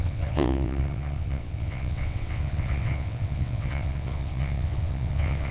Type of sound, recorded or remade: remade